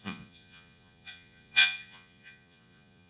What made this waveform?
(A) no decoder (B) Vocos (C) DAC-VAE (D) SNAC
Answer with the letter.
B